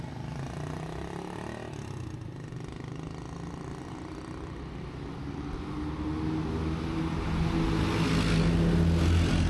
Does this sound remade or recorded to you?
recorded